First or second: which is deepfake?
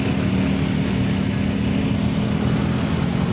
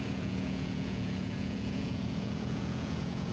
second